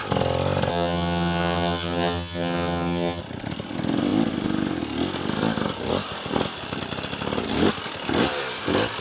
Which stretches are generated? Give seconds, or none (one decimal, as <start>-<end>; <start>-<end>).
0.7-3.2